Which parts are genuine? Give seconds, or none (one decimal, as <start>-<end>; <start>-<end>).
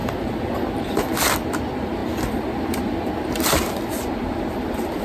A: none